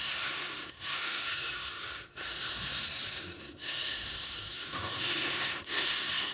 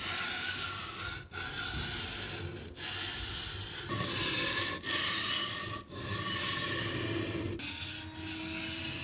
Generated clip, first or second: first